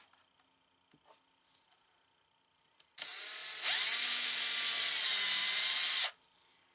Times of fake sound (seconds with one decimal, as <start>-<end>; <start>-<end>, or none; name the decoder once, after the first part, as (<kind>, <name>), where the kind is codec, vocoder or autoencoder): 5.4-5.9 (vocoder, BigVGAN v2)